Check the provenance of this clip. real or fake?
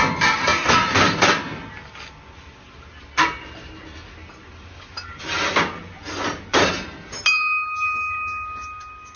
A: real